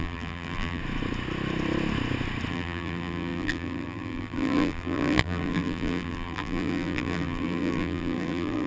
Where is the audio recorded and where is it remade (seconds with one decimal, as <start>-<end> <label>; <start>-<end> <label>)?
0.0-0.8 remade; 0.8-2.5 recorded; 2.5-8.7 remade